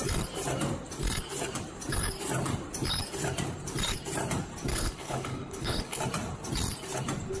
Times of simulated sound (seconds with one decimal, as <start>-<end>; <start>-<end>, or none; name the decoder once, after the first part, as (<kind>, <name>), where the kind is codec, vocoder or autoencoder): 4.7-6.0 (codec, HILCodec)